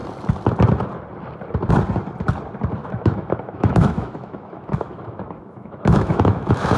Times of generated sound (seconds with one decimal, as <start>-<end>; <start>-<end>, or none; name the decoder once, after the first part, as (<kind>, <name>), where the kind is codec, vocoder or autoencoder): 2.8-6.8 (autoencoder, DAC-VAE)